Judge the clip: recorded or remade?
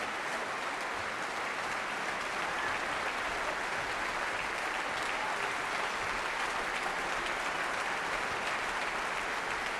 recorded